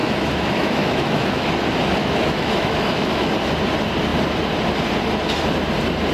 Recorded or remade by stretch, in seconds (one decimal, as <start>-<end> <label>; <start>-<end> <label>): 0.0-1.5 remade; 1.5-2.0 recorded; 2.0-3.3 remade; 3.3-6.1 recorded